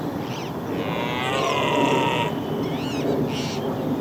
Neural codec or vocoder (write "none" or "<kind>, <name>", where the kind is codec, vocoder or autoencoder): none